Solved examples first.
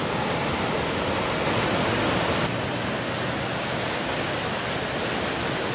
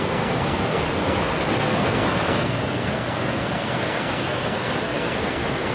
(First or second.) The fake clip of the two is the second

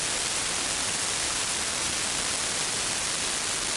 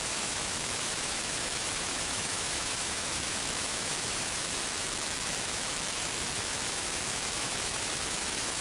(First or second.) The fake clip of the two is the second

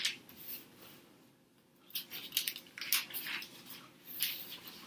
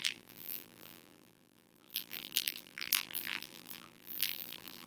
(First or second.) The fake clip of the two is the second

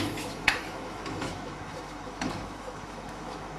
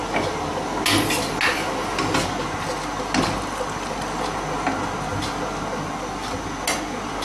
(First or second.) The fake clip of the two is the first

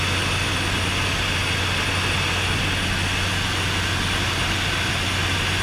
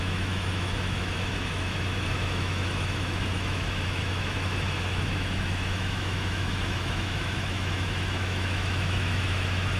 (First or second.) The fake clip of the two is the second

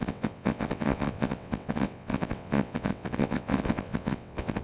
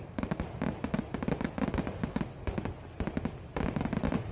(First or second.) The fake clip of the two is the first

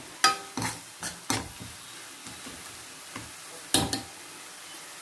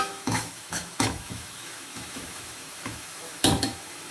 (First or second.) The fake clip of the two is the second